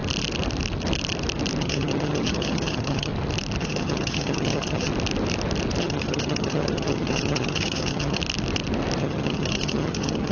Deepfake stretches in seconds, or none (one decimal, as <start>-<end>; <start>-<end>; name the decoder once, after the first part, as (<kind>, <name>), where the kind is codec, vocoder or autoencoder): 1.6-3.1 (vocoder, HiFi-GAN); 3.6-4.9; 5.8-8.2; 9.0-10.3